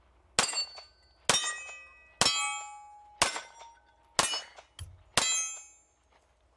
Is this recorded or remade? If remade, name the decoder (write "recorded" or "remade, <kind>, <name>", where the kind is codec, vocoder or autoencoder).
recorded